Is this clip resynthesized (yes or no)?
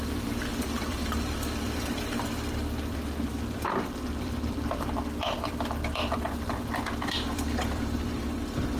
yes